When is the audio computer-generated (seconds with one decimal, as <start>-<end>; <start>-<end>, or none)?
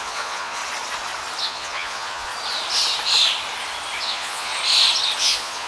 0.0-0.6; 1.4-2.3; 4.0-4.5; 5.2-5.7